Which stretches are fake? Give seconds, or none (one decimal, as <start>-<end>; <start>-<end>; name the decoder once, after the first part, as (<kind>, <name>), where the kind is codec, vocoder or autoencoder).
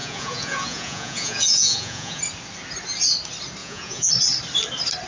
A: 0.0-2.2 (vocoder, Vocos); 3.6-4.1